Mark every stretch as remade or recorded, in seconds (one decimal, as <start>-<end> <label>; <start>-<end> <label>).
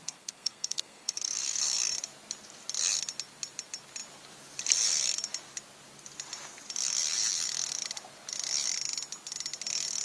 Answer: 0.0-1.6 remade; 1.6-10.0 recorded